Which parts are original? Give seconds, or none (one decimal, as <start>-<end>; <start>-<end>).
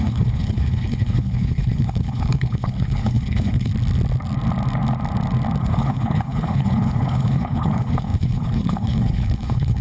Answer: 3.7-5.6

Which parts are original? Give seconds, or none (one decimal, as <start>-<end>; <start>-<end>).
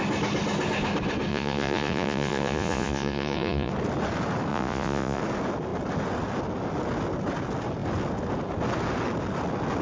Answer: 0.0-1.3; 3.7-4.5; 5.2-9.8